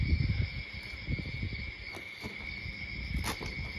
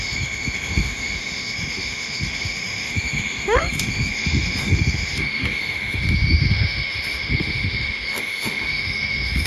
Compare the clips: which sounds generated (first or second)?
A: second